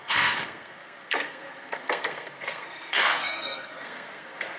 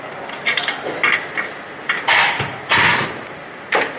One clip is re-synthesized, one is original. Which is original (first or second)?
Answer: second